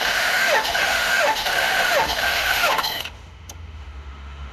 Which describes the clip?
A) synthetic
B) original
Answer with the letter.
A